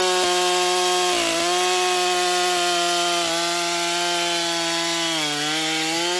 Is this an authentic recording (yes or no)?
yes